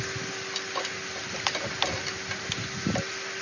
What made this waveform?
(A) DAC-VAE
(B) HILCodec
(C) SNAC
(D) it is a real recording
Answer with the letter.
D